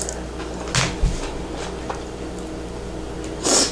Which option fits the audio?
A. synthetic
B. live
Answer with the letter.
B